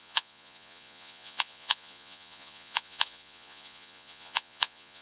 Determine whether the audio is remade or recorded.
remade